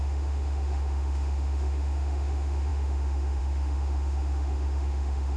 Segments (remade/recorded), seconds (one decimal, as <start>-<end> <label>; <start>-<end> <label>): 0.0-5.4 remade